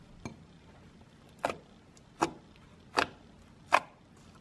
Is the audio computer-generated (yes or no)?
no